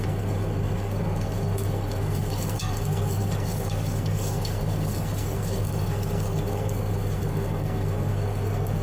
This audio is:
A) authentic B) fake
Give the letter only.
B